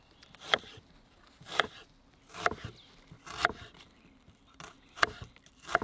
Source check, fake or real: real